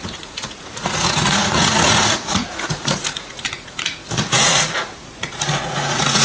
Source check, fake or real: fake